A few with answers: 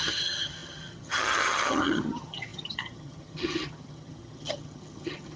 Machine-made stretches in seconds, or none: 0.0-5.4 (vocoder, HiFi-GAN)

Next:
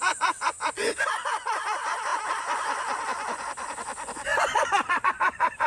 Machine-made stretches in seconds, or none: 0.0-5.7 (vocoder, Vocos)

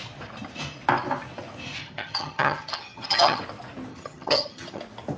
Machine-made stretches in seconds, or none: 1.8-3.4 (vocoder, HiFi-GAN); 3.9-4.8